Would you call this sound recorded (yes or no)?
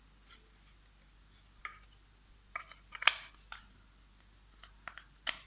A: yes